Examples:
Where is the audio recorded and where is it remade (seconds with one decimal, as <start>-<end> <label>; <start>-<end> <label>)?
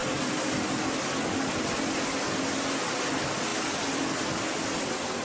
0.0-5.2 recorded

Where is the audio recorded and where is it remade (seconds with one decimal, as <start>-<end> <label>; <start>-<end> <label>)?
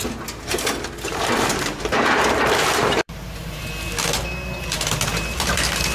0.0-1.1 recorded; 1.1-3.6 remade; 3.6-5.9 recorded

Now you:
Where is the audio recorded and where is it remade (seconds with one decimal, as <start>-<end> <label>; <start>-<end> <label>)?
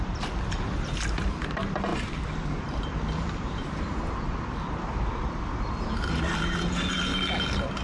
0.0-7.8 recorded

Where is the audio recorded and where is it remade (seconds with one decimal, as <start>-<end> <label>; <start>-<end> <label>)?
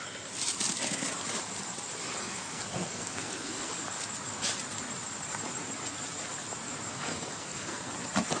0.0-2.2 recorded; 2.2-3.7 remade; 3.7-6.9 recorded; 6.9-7.9 remade; 7.9-8.4 recorded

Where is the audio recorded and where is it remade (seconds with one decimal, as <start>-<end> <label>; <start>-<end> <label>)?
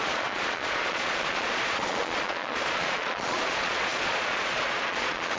0.0-5.4 remade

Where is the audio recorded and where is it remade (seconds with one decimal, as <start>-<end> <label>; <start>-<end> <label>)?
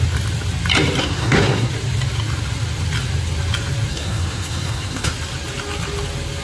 0.0-1.0 recorded; 1.0-1.7 remade; 1.7-3.9 recorded; 3.9-5.1 remade; 5.1-6.4 recorded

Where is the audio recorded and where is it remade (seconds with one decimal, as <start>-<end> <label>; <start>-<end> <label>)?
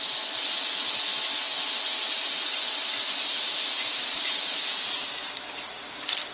0.0-6.3 recorded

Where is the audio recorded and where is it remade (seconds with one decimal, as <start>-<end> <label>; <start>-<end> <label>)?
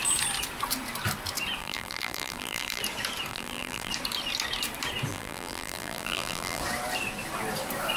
0.0-1.6 recorded; 1.6-2.8 remade; 2.8-3.3 recorded; 3.3-3.9 remade; 3.9-5.1 recorded; 5.1-6.6 remade; 6.6-8.0 recorded